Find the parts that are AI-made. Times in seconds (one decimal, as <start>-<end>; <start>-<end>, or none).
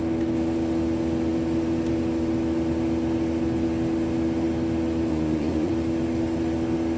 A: 5.1-5.7